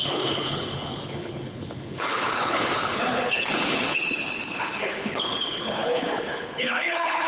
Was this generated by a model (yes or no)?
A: yes